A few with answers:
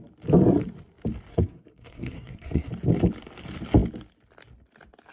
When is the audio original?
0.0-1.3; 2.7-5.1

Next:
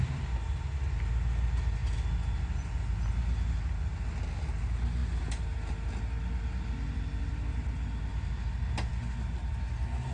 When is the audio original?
0.0-10.1

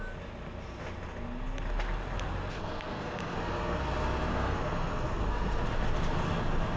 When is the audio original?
0.0-2.5; 3.8-4.3; 5.6-6.8

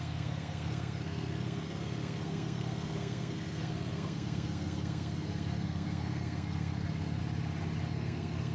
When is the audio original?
7.2-7.9